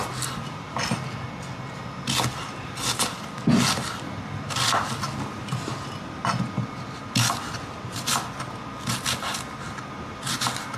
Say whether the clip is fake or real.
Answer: real